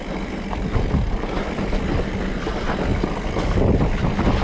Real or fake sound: real